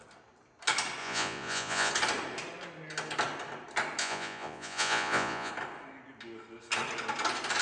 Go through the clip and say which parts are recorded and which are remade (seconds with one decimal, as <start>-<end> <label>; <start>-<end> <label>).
0.0-1.0 recorded; 1.0-1.9 remade; 1.9-4.0 recorded; 4.0-5.5 remade; 5.5-7.6 recorded